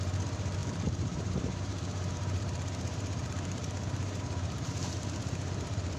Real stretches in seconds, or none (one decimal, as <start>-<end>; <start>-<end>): none